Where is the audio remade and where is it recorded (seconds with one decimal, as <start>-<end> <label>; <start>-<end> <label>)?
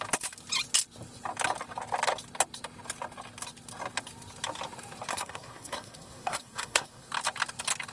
0.0-5.1 recorded; 5.1-7.1 remade; 7.1-7.9 recorded